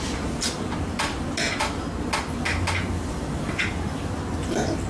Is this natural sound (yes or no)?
yes